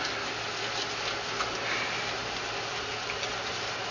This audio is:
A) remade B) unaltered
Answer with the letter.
B